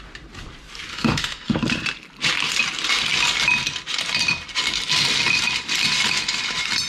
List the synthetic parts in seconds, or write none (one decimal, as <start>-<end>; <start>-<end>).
0.9-1.6